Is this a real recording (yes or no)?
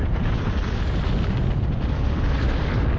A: yes